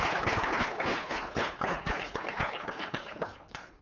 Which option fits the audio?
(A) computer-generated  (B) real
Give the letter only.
A